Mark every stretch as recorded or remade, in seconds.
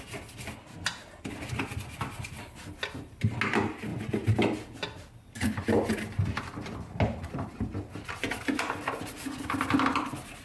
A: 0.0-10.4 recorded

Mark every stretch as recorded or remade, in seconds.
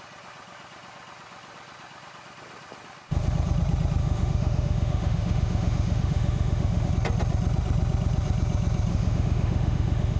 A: 0.0-4.0 recorded; 4.0-6.9 remade; 6.9-8.9 recorded; 8.9-10.2 remade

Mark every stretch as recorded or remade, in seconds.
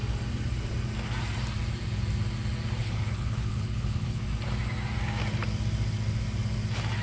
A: 0.0-2.8 recorded; 2.8-4.2 remade; 4.2-7.0 recorded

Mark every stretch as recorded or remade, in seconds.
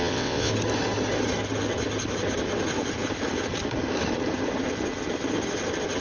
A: 0.0-0.5 remade; 0.5-6.0 recorded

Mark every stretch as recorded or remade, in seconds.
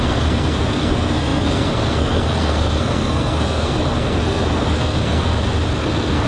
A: 0.0-5.3 remade; 5.3-5.8 recorded; 5.8-6.3 remade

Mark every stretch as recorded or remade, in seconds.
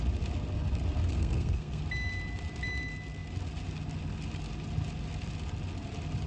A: 0.0-1.0 recorded; 1.0-1.8 remade; 1.8-6.3 recorded